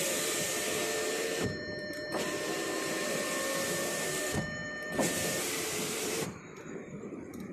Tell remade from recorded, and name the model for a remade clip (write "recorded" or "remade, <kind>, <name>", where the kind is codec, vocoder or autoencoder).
remade, vocoder, BigVGAN v2